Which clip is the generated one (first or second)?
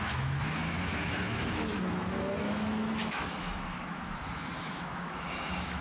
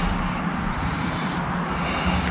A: first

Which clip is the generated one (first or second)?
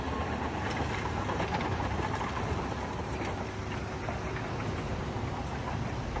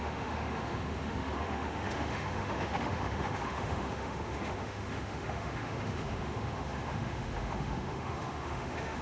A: second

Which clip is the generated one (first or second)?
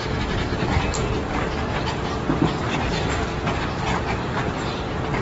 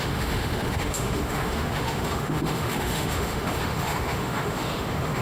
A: second